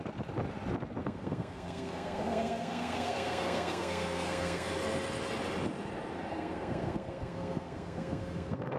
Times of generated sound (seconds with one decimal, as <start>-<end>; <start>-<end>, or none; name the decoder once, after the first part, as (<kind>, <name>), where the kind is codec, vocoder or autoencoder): 1.0-4.7 (codec, SNAC); 6.3-8.8